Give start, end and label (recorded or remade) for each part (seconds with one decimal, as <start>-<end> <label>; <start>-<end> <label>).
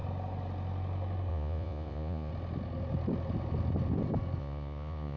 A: 0.0-1.3 recorded; 1.3-2.3 remade; 2.3-4.4 recorded; 4.4-5.2 remade